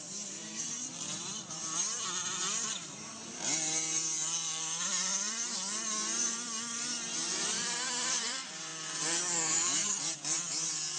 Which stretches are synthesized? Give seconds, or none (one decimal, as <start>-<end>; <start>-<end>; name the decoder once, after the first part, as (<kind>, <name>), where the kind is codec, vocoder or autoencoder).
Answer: 0.0-8.7 (vocoder, BigVGAN v2); 9.5-11.0